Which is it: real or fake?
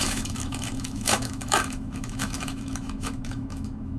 fake